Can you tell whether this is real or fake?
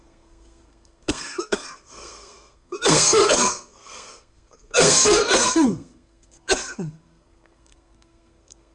fake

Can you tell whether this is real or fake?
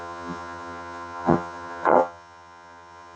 fake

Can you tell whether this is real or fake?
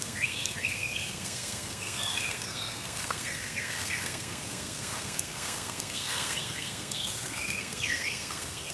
fake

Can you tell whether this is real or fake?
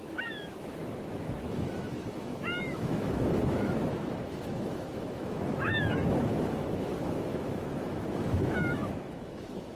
fake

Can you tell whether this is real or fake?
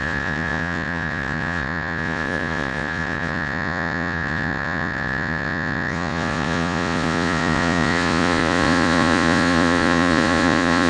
fake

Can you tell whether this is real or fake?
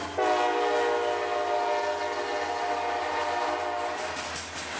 real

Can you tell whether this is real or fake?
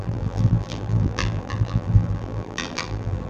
fake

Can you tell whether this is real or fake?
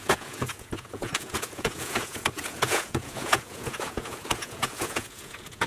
fake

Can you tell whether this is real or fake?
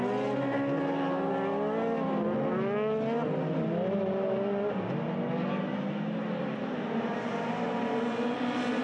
real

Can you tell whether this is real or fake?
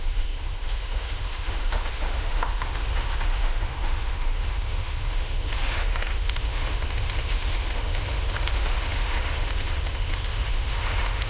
fake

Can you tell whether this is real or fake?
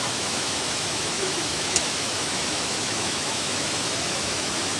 fake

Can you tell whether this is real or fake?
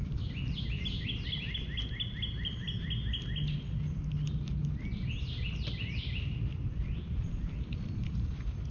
real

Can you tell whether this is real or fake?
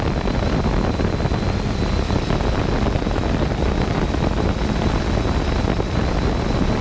real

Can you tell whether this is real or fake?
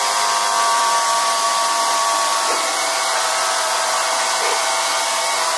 fake